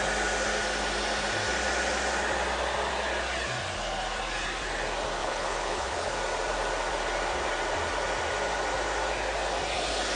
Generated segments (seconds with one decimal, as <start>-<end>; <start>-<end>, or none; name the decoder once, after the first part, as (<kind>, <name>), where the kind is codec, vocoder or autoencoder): 5.2-6.2 (codec, HILCodec)